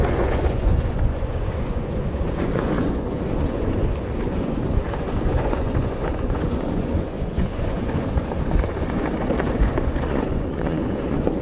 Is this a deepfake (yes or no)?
yes